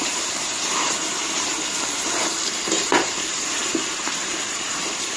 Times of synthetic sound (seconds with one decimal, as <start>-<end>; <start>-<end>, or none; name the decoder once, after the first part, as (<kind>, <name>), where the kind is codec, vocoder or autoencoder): 0.0-5.2 (vocoder, BigVGAN v2)